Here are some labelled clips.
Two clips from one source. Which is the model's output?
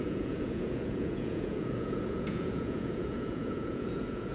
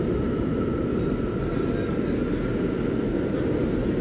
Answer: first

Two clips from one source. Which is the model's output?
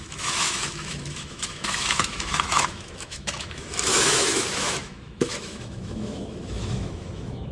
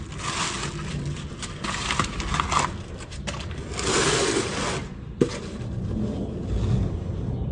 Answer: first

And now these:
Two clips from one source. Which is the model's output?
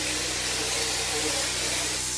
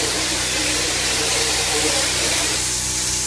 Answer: second